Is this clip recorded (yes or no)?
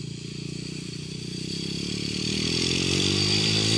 yes